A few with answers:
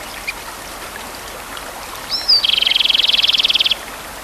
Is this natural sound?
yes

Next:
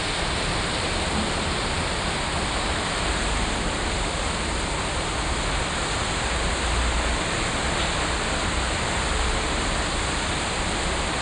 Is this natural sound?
yes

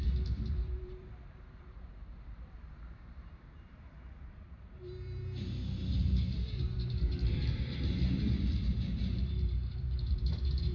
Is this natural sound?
no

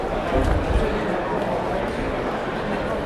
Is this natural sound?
yes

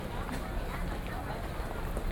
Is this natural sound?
yes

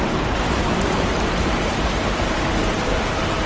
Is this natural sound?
no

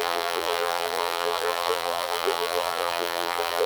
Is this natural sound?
no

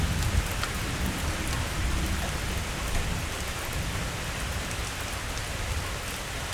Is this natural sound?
yes